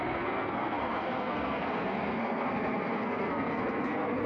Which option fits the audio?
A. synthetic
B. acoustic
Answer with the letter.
A